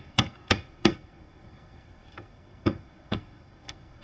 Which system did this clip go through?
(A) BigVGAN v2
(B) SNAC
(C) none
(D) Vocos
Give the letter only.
B